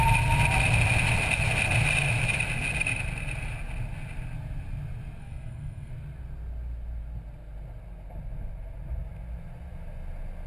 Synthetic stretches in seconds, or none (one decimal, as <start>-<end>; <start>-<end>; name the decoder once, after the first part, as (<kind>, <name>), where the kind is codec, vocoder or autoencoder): 5.2-5.9 (codec, SNAC)